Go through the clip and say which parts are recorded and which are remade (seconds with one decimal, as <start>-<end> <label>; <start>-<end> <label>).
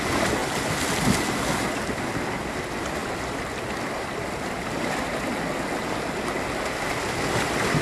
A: 0.0-7.8 recorded